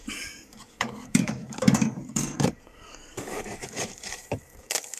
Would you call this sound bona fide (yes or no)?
no